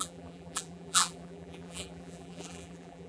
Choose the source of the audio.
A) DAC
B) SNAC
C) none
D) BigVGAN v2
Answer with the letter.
D